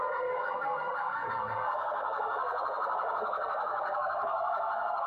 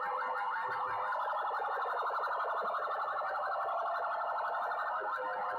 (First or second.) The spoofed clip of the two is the first